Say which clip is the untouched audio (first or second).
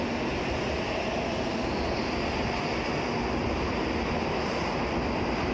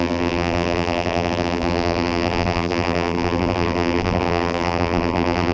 first